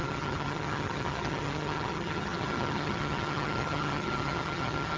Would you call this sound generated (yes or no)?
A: yes